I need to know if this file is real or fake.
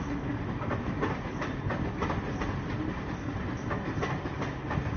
real